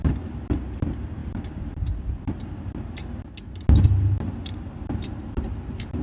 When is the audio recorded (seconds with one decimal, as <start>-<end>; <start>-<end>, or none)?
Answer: 0.0-6.0